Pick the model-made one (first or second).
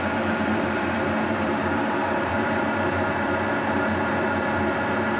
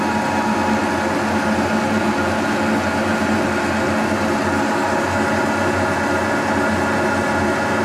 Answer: first